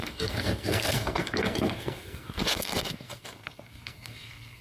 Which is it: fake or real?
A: fake